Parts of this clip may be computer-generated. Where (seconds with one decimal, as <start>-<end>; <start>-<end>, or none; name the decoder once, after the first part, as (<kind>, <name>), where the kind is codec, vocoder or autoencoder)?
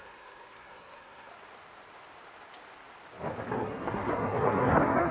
0.0-1.3 (codec, SNAC); 3.5-5.1